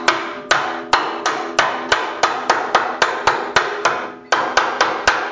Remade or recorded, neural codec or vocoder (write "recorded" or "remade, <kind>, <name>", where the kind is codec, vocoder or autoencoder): recorded